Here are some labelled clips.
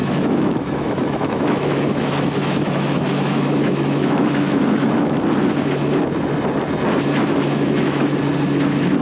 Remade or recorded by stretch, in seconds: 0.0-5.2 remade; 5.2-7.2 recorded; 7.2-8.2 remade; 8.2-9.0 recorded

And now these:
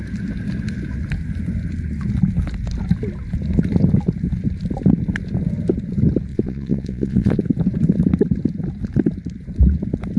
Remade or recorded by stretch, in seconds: 0.0-6.3 recorded; 6.3-7.4 remade; 7.4-10.2 recorded

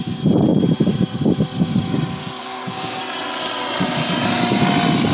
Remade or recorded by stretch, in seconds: 0.0-2.4 recorded; 2.4-3.0 remade; 3.0-5.1 recorded

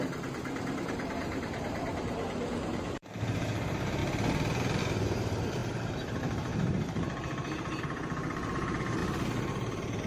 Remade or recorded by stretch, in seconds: 0.0-4.0 remade; 4.0-4.8 recorded; 4.8-9.0 remade; 9.0-9.5 recorded; 9.5-10.1 remade